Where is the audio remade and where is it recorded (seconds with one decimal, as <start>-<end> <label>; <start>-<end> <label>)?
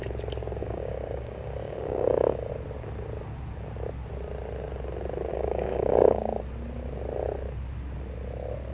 0.0-0.6 recorded; 0.6-2.5 remade; 2.5-5.3 recorded; 5.3-6.4 remade; 6.4-8.7 recorded